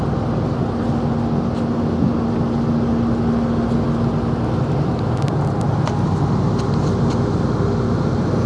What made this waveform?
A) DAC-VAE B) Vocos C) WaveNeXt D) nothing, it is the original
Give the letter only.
D